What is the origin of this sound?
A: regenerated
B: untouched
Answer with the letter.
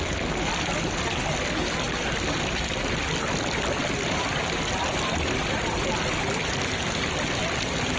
B